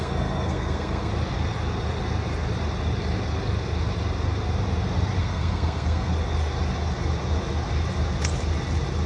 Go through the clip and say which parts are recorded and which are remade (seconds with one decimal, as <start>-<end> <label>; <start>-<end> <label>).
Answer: 0.0-1.1 remade; 1.1-5.2 recorded; 5.2-6.1 remade; 6.1-9.1 recorded